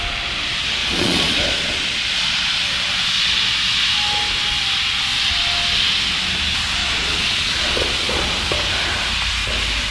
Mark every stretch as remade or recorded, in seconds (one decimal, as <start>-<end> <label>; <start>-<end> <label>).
0.0-0.8 recorded; 0.8-1.7 remade; 1.7-6.8 recorded; 6.8-8.3 remade; 8.3-9.9 recorded